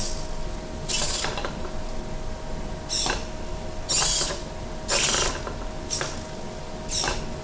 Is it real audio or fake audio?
real